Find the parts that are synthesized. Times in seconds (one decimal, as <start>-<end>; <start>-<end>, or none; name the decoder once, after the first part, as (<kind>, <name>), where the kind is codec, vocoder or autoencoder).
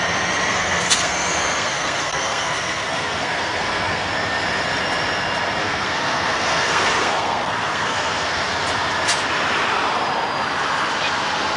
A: 0.5-4.1 (codec, SNAC); 5.6-8.5